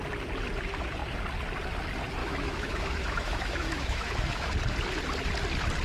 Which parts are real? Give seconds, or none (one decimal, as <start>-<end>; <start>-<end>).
0.0-2.2; 4.5-5.8